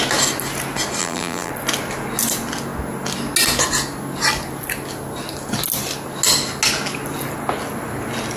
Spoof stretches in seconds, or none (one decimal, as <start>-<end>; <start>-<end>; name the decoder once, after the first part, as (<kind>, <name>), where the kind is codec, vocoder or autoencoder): 1.0-1.5 (vocoder, BigVGAN v2)